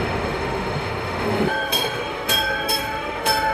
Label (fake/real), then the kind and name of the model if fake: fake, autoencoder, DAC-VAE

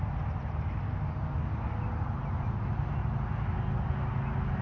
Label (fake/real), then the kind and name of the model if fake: real